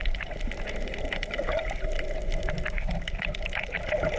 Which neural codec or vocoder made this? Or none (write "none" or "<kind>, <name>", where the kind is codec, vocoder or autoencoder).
none